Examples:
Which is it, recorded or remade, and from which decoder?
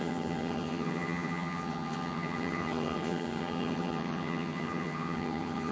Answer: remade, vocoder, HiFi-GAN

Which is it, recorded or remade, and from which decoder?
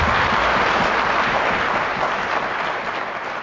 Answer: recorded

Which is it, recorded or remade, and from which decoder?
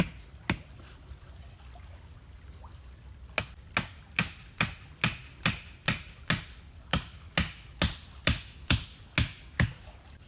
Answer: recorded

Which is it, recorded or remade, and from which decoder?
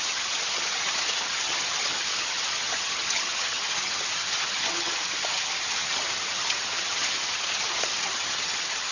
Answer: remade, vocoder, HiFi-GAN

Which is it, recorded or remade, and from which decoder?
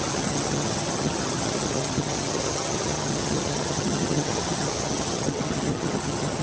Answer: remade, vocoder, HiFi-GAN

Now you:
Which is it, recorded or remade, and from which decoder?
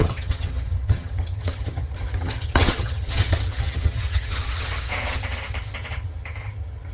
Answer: remade, vocoder, HiFi-GAN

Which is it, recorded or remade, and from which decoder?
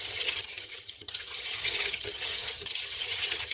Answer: remade, vocoder, HiFi-GAN